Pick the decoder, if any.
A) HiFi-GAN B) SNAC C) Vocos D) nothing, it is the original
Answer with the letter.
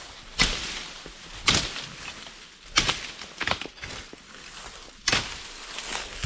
D